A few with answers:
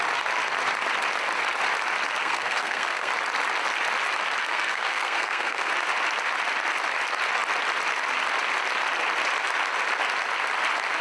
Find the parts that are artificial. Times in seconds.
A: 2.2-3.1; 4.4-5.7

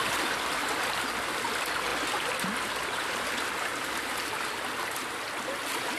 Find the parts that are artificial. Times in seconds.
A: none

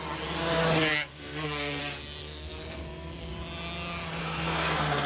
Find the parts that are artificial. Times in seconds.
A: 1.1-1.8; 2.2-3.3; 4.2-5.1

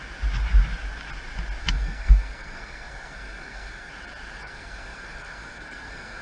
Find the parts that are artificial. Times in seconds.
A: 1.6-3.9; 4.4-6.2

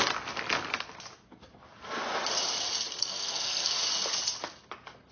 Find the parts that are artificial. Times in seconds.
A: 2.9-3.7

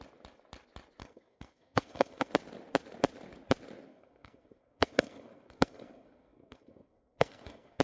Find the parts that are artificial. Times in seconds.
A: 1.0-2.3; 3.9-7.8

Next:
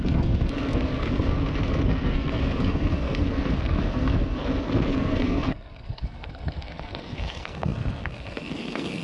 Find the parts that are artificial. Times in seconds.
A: 0.0-9.0

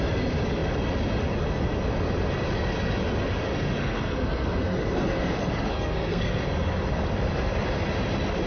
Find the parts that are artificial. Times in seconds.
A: 3.8-6.4